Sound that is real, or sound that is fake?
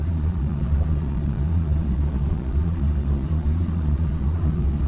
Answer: fake